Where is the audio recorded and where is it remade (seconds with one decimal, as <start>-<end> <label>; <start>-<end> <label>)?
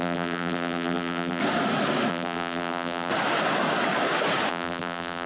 0.0-1.4 remade; 1.4-2.1 recorded; 2.1-3.1 remade; 3.1-4.5 recorded; 4.5-5.3 remade